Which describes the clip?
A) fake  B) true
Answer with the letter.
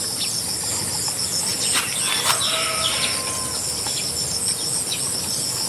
B